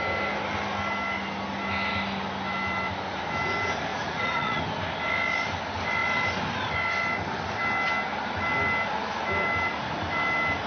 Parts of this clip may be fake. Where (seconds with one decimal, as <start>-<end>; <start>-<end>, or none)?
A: 3.9-4.6